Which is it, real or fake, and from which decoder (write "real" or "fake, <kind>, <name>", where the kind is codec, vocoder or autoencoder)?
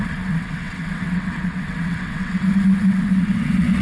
fake, vocoder, WaveNeXt